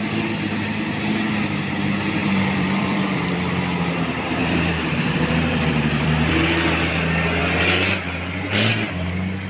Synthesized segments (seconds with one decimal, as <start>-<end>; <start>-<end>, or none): 2.2-3.4; 4.4-6.3